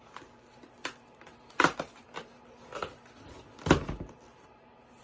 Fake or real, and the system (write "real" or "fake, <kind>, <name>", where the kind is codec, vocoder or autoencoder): real